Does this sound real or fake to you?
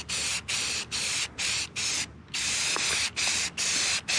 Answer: real